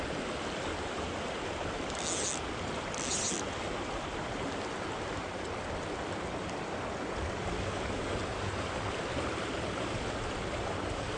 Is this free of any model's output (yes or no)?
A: yes